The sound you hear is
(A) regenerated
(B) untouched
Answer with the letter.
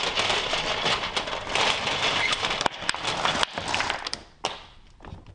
A